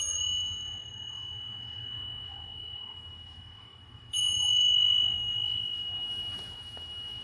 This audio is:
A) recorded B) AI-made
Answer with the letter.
B